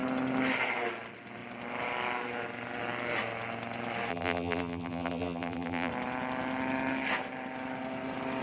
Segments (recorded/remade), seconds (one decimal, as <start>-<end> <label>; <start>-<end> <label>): 0.0-4.1 recorded; 4.1-5.9 remade; 5.9-8.4 recorded